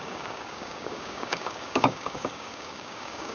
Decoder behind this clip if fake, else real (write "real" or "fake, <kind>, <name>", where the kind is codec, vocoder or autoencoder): fake, codec, DAC